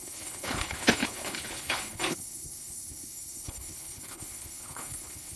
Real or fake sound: fake